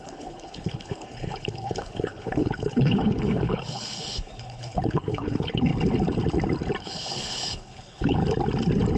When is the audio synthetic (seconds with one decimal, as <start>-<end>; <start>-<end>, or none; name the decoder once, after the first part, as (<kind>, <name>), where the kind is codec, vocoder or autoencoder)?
0.0-5.7 (codec, HILCodec); 6.8-8.2